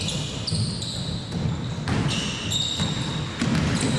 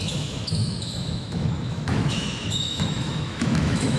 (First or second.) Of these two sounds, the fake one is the second